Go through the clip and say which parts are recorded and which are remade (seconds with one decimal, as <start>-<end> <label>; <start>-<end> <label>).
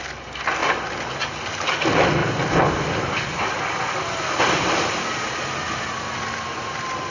0.0-7.1 recorded